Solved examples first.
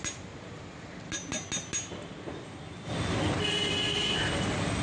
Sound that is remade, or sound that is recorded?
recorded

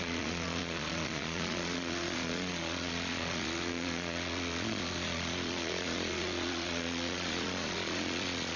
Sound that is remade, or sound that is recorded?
remade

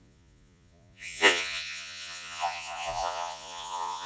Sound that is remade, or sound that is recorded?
remade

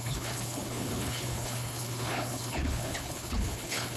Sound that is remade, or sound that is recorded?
remade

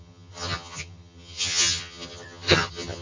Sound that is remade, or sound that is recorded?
remade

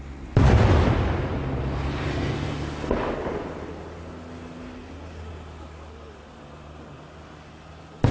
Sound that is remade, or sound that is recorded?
recorded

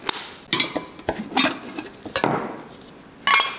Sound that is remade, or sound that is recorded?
recorded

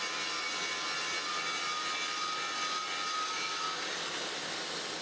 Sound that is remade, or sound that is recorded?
recorded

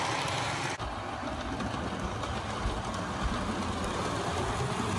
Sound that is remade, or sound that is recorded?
recorded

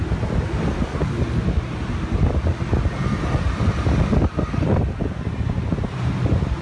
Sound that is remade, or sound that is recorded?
recorded